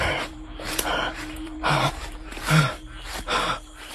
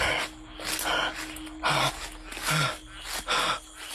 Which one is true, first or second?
second